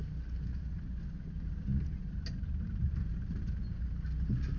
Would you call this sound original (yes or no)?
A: yes